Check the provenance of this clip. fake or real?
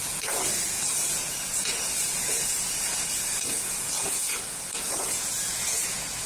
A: fake